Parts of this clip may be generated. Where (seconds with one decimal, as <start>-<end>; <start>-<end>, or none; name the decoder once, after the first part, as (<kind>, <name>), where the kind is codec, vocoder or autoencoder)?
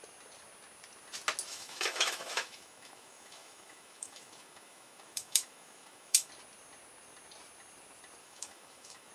1.5-6.3 (autoencoder, DAC-VAE); 8.2-9.1